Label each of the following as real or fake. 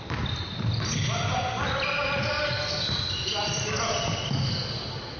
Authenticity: real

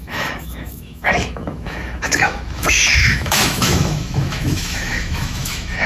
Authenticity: fake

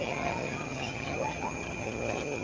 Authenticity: fake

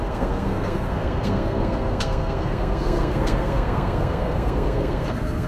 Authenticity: fake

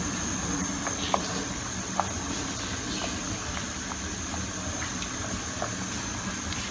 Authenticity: fake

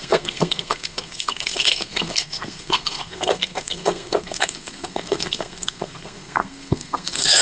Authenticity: fake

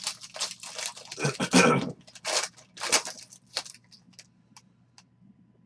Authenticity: real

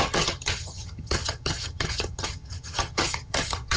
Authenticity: fake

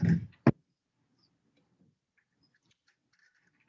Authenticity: real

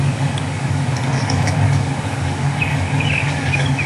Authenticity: fake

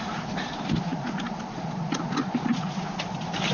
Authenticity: real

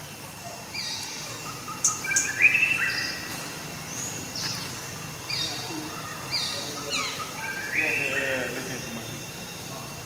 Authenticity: real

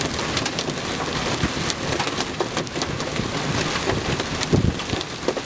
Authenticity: real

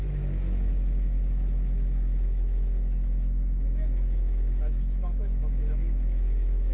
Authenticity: fake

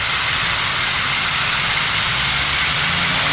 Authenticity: real